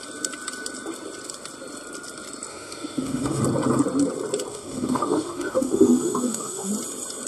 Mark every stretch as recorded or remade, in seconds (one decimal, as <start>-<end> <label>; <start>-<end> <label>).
0.0-2.5 recorded; 2.5-3.4 remade; 3.4-4.5 recorded; 4.5-6.7 remade; 6.7-7.3 recorded